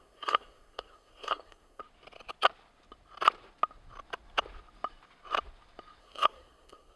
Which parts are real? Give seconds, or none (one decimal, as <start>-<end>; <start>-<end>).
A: 1.8-6.0